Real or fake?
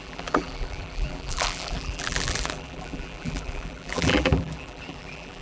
fake